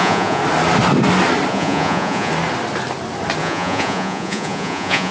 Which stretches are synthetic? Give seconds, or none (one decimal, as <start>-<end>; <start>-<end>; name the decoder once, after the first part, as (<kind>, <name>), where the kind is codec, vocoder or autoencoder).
0.0-0.4 (vocoder, Vocos); 1.5-2.3; 3.4-5.1